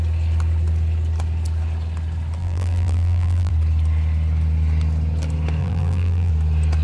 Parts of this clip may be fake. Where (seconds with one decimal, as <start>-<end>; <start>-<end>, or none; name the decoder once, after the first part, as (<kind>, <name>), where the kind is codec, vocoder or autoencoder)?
2.4-3.5 (vocoder, BigVGAN v2); 5.6-6.3